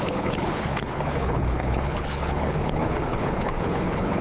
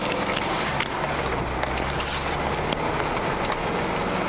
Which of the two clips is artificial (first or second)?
first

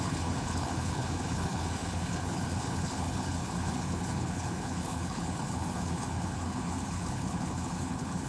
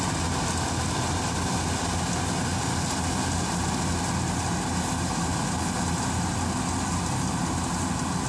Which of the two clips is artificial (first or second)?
first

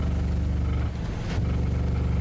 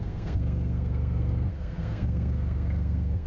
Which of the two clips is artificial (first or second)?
second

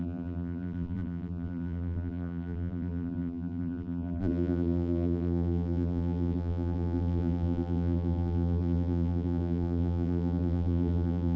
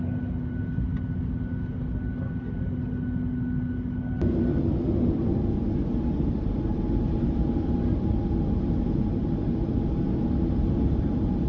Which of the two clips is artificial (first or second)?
first